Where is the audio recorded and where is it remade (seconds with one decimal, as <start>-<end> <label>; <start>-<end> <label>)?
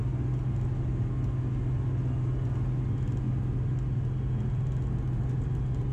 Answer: 0.0-5.9 recorded